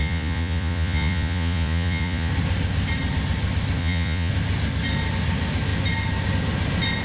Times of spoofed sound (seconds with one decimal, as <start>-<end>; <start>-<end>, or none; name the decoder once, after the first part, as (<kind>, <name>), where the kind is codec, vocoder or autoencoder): 0.0-2.3 (vocoder, Vocos); 3.8-4.3